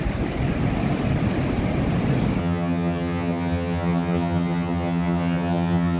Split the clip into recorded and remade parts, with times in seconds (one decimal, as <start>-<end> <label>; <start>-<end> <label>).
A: 0.0-2.4 recorded; 2.4-6.0 remade